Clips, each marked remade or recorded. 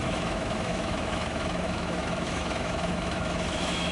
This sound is remade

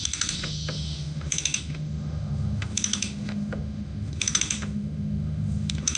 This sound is remade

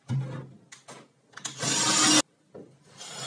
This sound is recorded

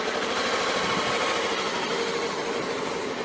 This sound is recorded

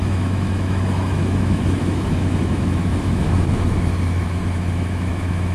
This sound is remade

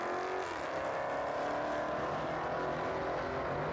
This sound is recorded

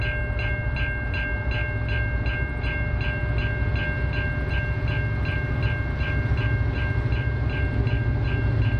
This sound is recorded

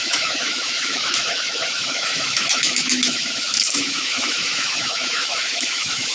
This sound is remade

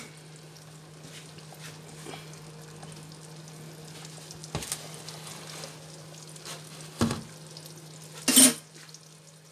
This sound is recorded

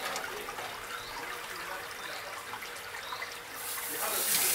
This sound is recorded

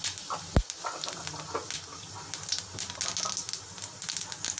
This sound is recorded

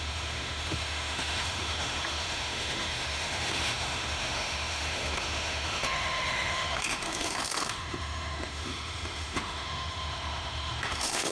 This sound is remade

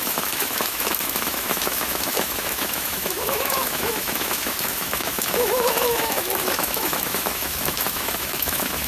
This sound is remade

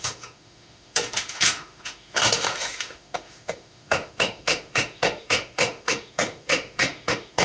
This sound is remade